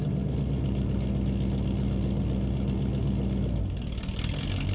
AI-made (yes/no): no